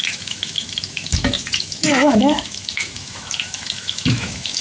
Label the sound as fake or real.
fake